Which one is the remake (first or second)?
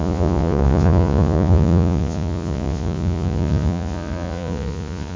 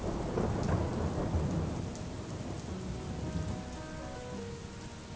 first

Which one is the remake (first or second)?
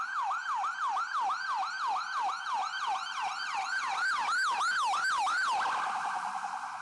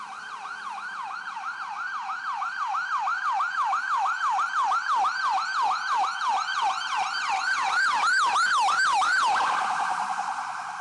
second